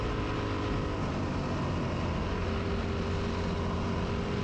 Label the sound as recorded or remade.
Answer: recorded